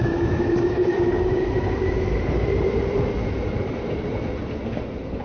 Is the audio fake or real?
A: fake